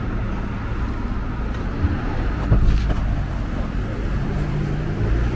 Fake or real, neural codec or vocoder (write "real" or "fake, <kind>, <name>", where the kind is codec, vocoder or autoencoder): real